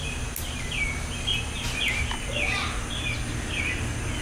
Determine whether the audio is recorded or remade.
recorded